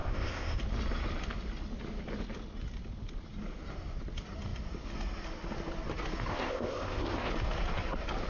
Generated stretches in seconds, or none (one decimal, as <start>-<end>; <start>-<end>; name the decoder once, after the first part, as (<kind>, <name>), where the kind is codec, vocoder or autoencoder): 0.0-0.6 (codec, ZipCodec); 6.3-7.3